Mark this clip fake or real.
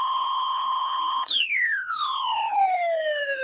fake